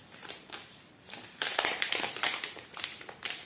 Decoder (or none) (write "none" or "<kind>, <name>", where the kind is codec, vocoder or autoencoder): vocoder, BigVGAN v2